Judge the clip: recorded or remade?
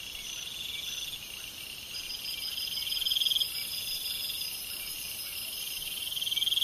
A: recorded